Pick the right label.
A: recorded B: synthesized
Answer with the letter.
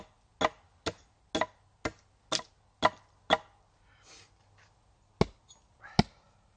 A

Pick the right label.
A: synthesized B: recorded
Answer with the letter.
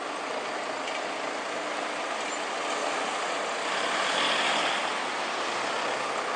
B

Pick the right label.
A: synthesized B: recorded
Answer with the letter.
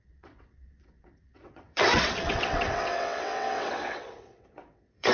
A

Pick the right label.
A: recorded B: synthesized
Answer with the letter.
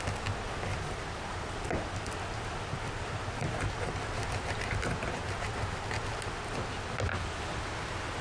A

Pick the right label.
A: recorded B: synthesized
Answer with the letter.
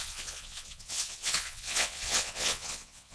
B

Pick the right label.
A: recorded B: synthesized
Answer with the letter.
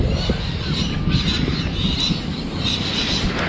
A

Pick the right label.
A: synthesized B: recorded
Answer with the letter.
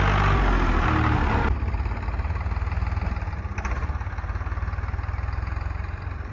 B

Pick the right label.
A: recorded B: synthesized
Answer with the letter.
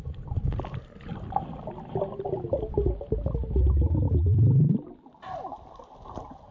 A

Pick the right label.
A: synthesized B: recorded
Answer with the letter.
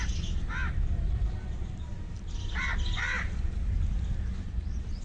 B